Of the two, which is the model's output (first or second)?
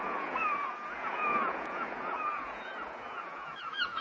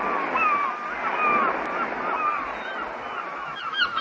first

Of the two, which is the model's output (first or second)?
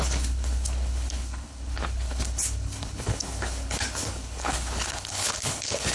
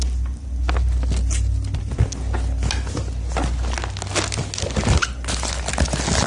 first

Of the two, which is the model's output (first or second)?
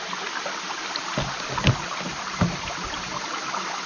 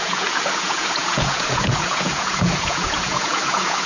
second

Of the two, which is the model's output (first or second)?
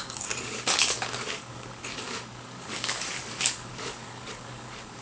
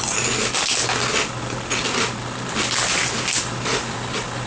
first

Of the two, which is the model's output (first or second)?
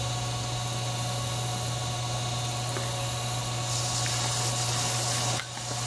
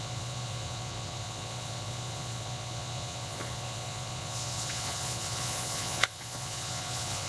second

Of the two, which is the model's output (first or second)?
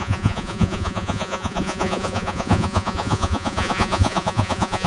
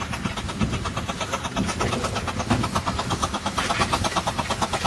first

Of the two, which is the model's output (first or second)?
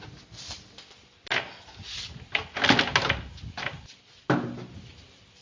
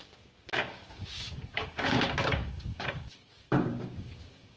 second